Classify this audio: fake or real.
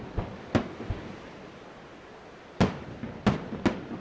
real